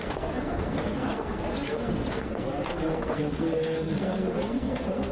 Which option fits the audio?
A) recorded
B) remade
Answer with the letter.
B